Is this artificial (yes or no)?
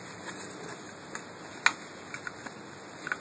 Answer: no